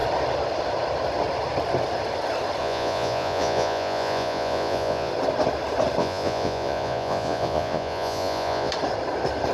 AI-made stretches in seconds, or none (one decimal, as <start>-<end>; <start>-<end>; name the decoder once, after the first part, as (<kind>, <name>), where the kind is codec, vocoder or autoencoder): 2.6-5.1 (vocoder, Vocos); 6.0-8.7